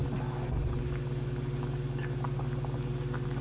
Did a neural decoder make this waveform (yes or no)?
no